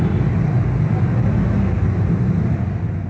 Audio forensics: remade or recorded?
recorded